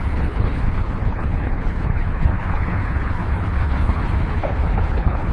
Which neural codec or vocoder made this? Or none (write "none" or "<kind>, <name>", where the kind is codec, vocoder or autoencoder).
codec, HILCodec